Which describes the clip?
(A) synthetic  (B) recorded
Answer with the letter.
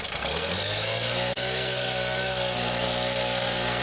A